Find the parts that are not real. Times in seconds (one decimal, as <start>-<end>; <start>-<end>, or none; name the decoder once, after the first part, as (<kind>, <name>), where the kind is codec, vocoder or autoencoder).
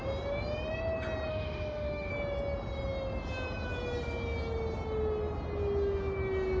1.3-2.1 (autoencoder, DAC-VAE)